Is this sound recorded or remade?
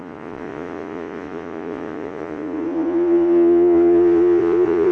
remade